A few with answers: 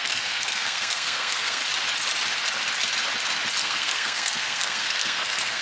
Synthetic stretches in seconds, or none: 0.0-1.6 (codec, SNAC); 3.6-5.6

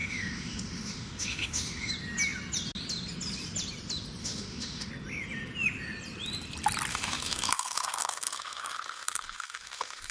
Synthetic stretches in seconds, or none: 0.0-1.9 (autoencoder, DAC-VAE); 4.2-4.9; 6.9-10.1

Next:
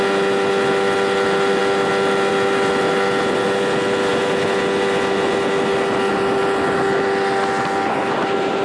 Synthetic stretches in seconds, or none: none

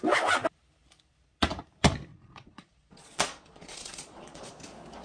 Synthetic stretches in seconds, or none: 2.1-4.5 (vocoder, Vocos)

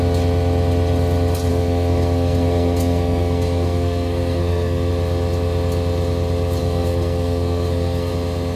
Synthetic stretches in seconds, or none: 1.5-4.9 (codec, SNAC); 6.6-8.1

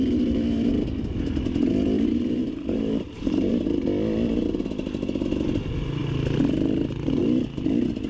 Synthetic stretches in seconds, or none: 2.4-3.5 (vocoder, BigVGAN v2)